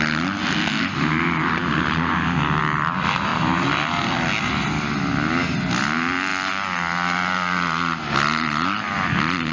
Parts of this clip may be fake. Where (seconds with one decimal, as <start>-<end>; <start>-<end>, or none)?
none

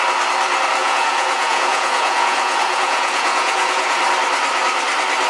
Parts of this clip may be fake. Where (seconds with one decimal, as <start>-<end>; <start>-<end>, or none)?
0.8-4.0

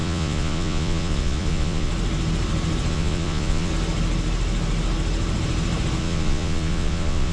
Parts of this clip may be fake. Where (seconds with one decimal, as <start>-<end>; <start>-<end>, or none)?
0.0-1.9; 2.9-3.7; 6.0-7.3

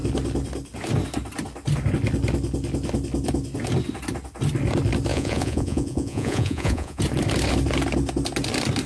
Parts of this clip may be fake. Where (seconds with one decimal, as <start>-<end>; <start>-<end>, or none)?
5.1-7.0

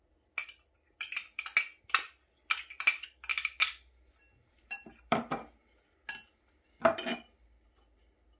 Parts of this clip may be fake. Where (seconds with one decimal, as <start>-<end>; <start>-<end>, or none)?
none